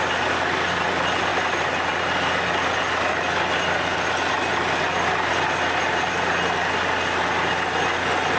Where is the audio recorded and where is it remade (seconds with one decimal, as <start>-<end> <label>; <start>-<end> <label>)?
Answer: 0.0-8.4 recorded